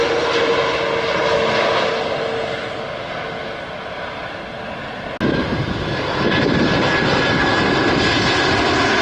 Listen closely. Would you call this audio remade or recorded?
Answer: recorded